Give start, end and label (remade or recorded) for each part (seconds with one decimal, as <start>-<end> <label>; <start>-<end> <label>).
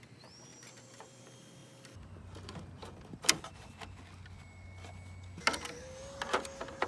0.0-0.5 recorded; 0.5-1.2 remade; 1.2-6.9 recorded